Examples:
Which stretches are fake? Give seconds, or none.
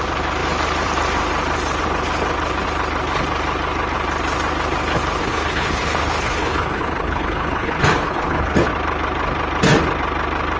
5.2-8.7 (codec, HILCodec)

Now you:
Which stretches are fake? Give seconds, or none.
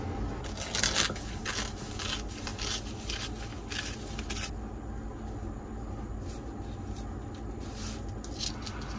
none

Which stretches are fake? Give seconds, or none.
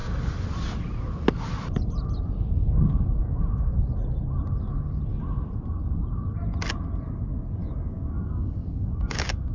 7.6-9.5 (codec, DAC)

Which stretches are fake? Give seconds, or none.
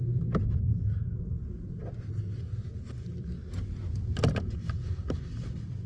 none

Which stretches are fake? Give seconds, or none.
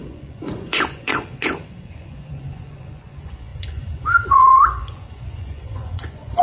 0.0-6.4 (vocoder, Vocos)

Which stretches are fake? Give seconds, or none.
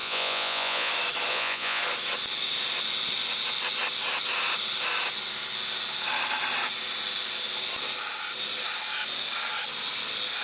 0.0-0.9 (vocoder, Vocos); 1.3-1.8